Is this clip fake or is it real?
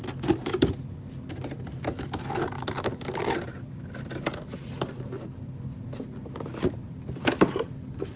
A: real